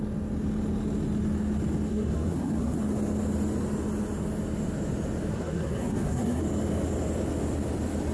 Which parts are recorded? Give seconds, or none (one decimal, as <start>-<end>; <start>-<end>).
0.0-1.9; 2.8-5.3; 6.4-8.1